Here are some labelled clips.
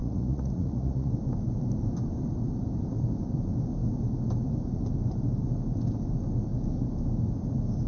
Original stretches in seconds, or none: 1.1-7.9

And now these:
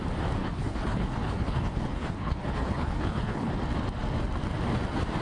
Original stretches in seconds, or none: 0.0-0.4; 3.5-5.2

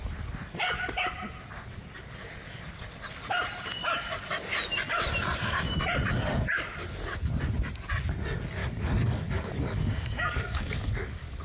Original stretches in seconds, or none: 0.0-8.6

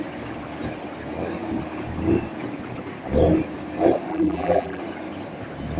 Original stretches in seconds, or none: 0.0-4.1; 4.8-5.8

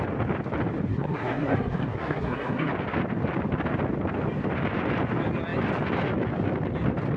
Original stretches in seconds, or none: 0.0-0.9; 2.7-7.2